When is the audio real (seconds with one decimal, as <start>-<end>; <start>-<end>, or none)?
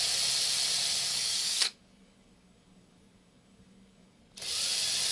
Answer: 0.0-1.1; 4.2-5.1